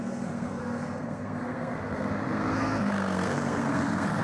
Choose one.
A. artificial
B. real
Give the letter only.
A